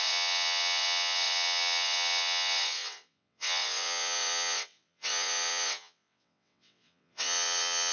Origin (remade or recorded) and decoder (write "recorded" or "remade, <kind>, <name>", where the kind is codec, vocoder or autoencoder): remade, vocoder, WaveNeXt